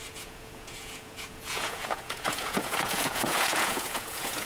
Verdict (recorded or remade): remade